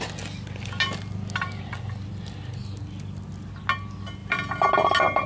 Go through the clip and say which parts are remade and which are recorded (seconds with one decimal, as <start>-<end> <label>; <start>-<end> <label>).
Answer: 0.0-5.3 recorded